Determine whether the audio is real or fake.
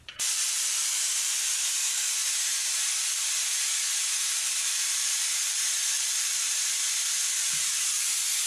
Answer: fake